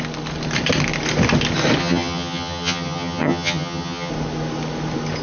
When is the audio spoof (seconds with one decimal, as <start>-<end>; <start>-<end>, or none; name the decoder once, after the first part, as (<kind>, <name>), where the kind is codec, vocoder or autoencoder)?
1.8-4.1 (vocoder, HiFi-GAN)